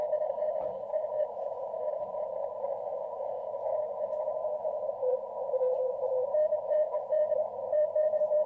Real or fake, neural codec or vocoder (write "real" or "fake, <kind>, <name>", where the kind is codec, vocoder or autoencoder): fake, vocoder, Vocos